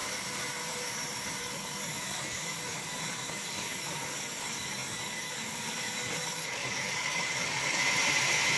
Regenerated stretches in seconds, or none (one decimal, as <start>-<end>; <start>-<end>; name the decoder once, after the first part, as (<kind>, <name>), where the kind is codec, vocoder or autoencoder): 1.4-7.8 (codec, DAC)